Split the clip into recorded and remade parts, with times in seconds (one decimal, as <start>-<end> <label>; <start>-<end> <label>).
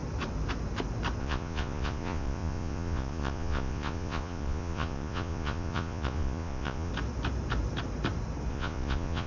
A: 0.0-1.2 recorded; 1.2-6.9 remade; 6.9-8.5 recorded; 8.5-9.3 remade